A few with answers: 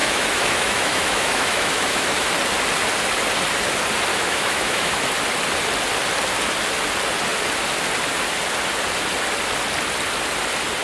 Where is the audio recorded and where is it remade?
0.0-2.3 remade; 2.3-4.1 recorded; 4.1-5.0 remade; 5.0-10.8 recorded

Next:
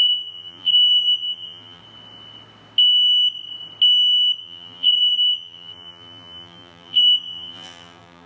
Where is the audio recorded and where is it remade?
0.0-1.8 remade; 1.8-4.4 recorded; 4.4-8.3 remade

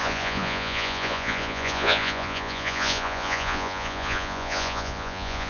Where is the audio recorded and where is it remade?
0.0-5.5 remade